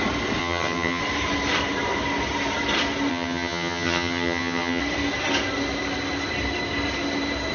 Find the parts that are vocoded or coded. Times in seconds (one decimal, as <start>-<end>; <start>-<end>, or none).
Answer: 0.4-1.0; 3.1-4.8